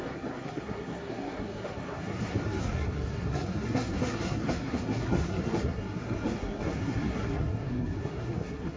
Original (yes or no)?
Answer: no